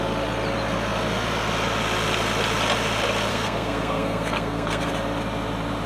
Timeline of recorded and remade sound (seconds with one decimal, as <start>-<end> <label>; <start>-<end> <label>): 0.0-3.3 recorded; 3.3-4.9 remade; 4.9-5.9 recorded